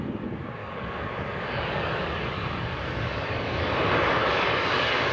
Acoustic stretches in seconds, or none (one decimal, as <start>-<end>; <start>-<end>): 0.0-0.6; 3.7-4.2